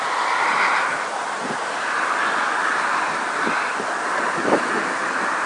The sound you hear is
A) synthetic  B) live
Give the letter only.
A